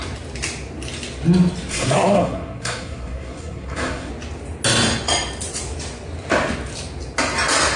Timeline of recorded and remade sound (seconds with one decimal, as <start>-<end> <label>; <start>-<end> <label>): 0.0-1.7 recorded; 1.7-4.1 remade; 4.1-7.8 recorded